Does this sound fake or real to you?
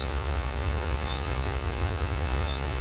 fake